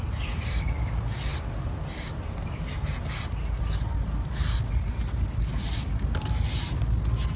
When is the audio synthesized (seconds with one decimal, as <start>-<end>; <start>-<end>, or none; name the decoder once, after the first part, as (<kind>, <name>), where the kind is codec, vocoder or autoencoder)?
none